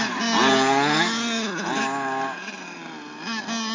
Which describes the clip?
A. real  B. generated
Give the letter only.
A